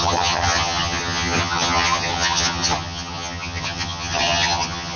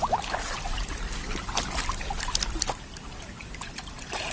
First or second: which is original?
second